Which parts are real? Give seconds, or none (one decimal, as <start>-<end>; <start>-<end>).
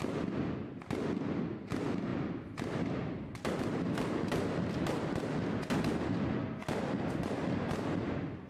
0.0-8.5